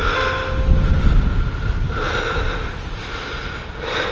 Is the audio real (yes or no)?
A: yes